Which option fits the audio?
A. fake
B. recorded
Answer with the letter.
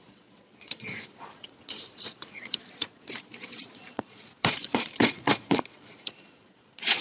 A